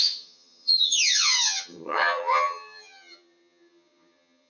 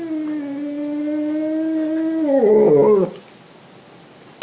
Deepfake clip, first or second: first